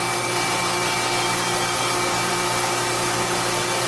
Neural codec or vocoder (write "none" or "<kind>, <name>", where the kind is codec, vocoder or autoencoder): none